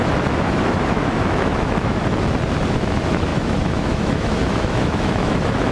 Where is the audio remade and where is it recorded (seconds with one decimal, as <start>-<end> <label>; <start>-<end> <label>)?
0.0-2.0 remade; 2.0-2.7 recorded; 2.7-5.7 remade